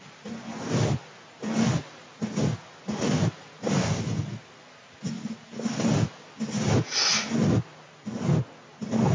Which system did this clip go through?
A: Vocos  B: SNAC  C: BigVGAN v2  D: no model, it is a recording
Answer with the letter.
D